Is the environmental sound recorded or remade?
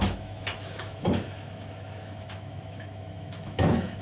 remade